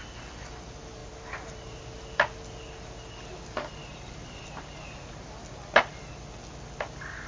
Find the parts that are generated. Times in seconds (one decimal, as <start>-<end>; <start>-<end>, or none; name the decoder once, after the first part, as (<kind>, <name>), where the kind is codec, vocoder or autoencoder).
1.0-1.8 (vocoder, BigVGAN v2); 3.8-5.4